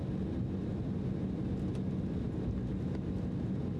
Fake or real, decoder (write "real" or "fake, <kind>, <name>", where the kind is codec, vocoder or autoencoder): real